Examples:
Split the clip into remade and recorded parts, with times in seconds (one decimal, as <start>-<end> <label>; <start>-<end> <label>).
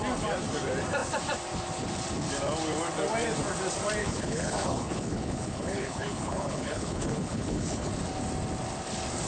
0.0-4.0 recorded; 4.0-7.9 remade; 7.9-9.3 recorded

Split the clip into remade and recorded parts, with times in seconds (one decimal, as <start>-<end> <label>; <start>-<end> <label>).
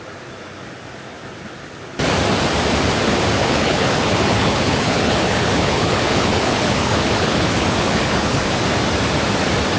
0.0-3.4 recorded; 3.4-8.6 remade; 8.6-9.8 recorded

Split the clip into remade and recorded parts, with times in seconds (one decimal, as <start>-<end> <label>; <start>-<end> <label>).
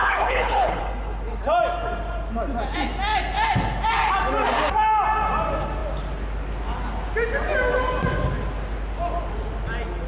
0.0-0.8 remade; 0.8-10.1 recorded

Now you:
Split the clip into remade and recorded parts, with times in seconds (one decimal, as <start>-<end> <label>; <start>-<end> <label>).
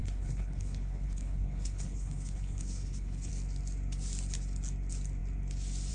0.0-3.3 remade; 3.3-5.9 recorded